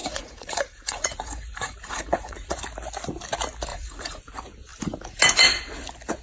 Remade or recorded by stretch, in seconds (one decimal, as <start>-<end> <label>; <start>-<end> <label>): 0.0-2.6 remade; 2.6-3.7 recorded; 3.7-4.2 remade; 4.2-6.2 recorded